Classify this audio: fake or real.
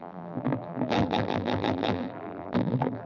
fake